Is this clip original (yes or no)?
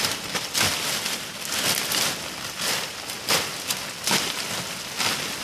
yes